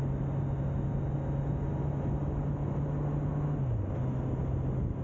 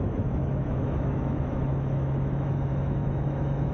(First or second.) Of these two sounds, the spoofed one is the second